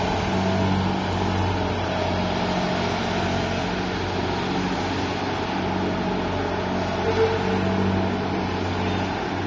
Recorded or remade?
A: recorded